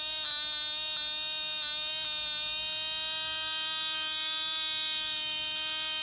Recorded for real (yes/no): yes